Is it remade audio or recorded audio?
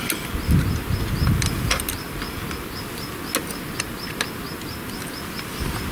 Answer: recorded